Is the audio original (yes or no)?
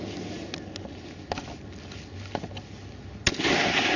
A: yes